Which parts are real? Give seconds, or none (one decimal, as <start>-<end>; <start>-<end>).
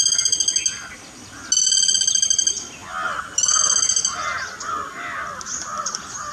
0.0-6.3